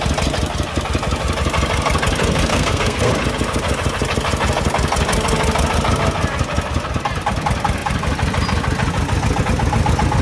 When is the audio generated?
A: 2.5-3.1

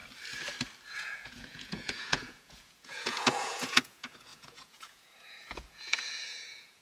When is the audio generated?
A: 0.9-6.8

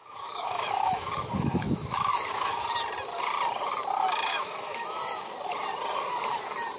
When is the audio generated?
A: 0.0-2.7; 4.3-5.3

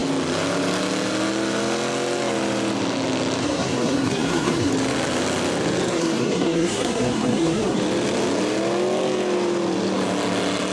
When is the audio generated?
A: 3.4-4.7; 5.9-7.8

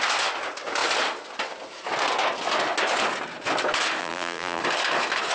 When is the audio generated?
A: 4.0-4.6

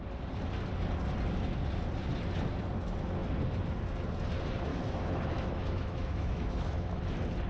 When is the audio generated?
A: 4.7-7.0

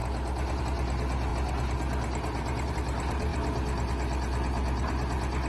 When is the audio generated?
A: none